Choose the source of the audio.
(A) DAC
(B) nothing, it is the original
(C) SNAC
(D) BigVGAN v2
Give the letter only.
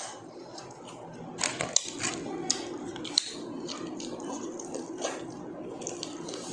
B